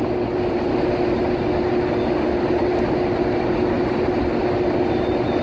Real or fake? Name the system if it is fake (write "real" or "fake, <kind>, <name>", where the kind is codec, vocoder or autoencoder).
real